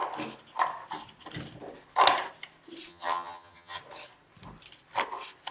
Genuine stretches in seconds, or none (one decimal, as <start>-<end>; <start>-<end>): 0.0-2.9; 3.8-5.5